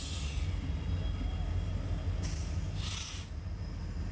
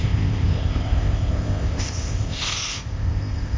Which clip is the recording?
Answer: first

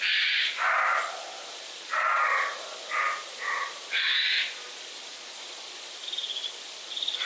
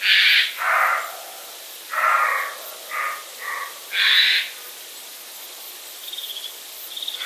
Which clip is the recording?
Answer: second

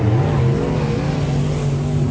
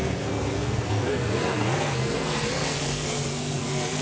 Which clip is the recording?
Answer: first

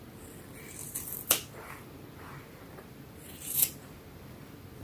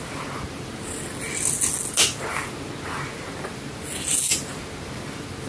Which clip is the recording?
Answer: second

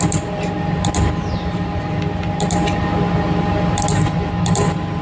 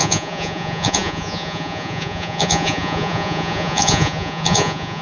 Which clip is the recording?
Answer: first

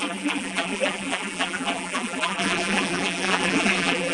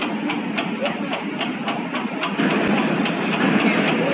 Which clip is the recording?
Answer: second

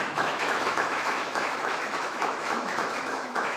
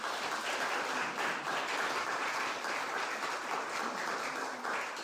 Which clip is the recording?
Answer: second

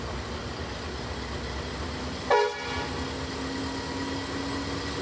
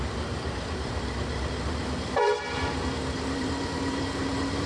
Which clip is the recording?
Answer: first